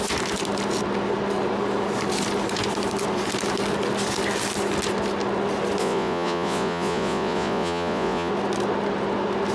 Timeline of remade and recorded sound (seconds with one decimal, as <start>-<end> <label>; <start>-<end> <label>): 0.0-5.8 recorded; 5.8-8.3 remade; 8.3-9.5 recorded